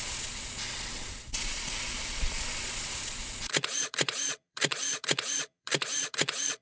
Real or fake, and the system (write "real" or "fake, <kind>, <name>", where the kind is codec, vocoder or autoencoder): fake, vocoder, Vocos